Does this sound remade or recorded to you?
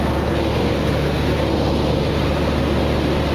recorded